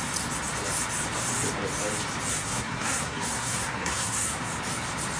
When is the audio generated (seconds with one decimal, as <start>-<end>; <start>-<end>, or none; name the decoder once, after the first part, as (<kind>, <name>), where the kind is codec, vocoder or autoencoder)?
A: 2.3-4.4 (codec, SNAC)